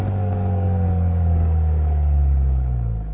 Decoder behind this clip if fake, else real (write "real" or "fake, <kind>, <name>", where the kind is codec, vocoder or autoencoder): fake, codec, DAC